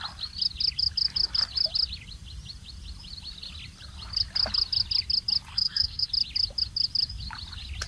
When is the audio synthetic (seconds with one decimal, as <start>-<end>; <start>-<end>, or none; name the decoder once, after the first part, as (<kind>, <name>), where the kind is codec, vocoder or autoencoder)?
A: 5.5-6.1 (codec, SNAC)